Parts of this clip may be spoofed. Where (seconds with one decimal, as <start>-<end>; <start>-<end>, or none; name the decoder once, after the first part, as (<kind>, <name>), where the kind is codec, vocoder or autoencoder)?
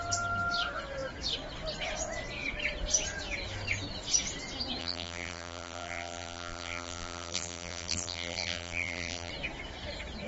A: 4.8-9.3 (vocoder, BigVGAN v2)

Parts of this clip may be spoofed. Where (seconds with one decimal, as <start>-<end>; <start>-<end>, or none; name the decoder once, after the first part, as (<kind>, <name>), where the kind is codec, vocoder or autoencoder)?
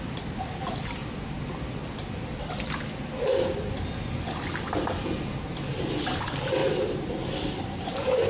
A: 0.0-6.6 (vocoder, BigVGAN v2); 7.2-8.3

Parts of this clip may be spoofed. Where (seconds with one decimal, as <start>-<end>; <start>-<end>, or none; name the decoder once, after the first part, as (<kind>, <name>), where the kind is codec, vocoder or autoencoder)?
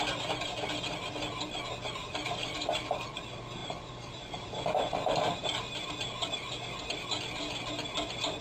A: 2.0-3.2 (vocoder, BigVGAN v2); 3.6-5.9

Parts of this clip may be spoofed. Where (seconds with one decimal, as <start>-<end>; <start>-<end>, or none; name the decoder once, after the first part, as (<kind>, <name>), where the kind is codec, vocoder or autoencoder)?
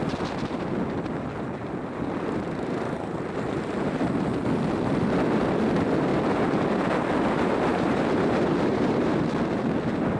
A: 7.7-9.1 (vocoder, BigVGAN v2)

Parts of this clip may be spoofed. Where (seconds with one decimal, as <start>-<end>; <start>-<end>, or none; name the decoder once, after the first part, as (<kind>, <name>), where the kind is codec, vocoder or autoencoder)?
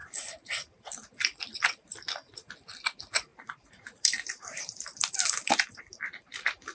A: 0.0-0.8 (vocoder, BigVGAN v2); 3.3-5.8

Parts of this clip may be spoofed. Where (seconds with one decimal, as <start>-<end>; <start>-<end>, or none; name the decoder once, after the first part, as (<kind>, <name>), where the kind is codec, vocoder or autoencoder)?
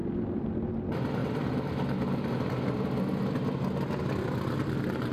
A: 0.0-0.5 (vocoder, BigVGAN v2); 1.2-1.7